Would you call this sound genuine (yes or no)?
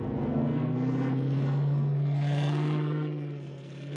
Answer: no